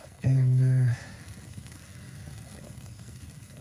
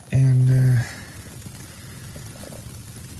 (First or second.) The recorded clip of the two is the second